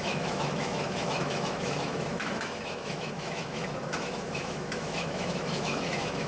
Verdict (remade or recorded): remade